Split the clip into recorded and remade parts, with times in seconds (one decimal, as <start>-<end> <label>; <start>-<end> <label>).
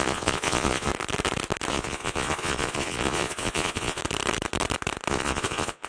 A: 0.0-0.9 remade; 0.9-1.7 recorded; 1.7-4.0 remade; 4.0-5.1 recorded; 5.1-5.9 remade